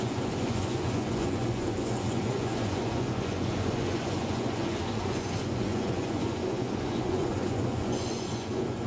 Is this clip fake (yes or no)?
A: yes